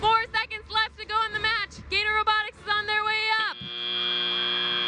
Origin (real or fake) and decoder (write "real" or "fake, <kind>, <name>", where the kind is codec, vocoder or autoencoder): real